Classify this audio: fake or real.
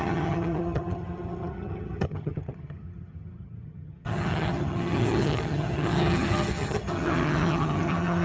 fake